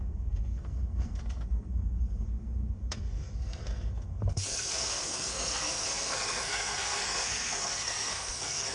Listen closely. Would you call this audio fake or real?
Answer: fake